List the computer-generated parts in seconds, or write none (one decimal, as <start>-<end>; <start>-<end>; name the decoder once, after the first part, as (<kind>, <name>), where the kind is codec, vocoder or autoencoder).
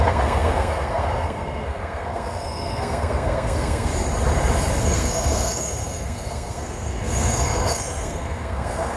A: 0.0-3.9 (codec, SNAC); 4.8-9.0